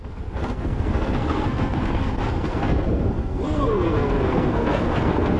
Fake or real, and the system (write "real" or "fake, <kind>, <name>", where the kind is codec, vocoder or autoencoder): fake, codec, SNAC